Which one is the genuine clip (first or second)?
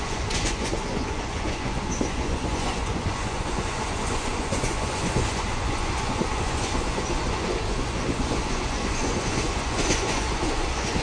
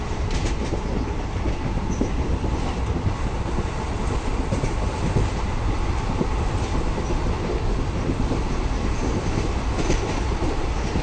second